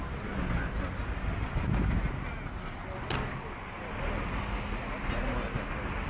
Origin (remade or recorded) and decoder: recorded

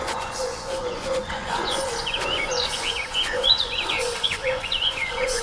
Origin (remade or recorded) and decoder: remade, vocoder, Vocos